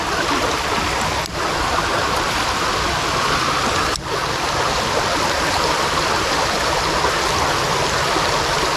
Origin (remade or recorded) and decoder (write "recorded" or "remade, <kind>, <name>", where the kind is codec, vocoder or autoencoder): recorded